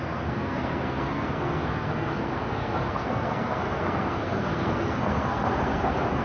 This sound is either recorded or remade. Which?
remade